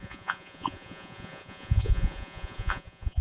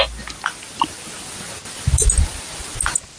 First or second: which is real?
second